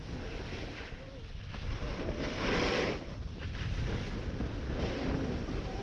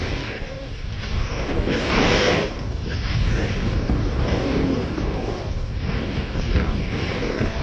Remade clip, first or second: second